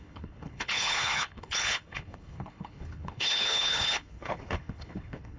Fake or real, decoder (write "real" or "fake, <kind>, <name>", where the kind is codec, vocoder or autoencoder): fake, codec, HILCodec